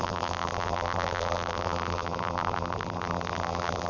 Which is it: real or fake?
fake